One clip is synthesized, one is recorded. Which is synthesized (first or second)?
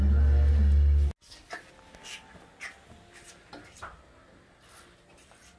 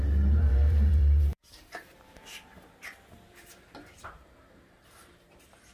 second